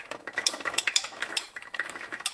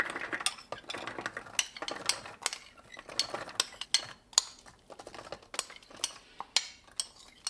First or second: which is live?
second